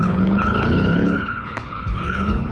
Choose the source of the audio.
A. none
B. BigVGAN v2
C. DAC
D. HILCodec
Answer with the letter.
D